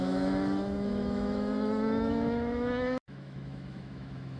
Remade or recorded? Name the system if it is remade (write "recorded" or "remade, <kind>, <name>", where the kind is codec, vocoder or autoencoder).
remade, autoencoder, DAC-VAE